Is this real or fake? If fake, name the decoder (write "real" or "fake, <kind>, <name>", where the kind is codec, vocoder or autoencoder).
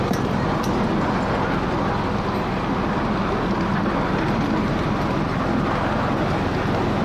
real